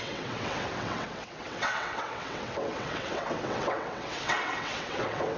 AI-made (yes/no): yes